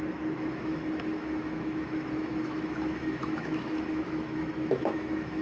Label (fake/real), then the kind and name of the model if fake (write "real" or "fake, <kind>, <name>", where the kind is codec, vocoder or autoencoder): fake, autoencoder, DAC-VAE